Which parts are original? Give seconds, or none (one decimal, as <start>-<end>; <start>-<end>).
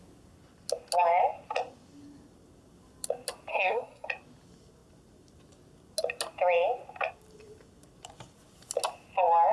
0.0-3.5; 4.1-9.5